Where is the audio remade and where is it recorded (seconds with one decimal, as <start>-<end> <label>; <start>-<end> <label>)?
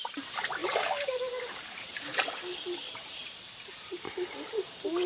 0.0-5.1 remade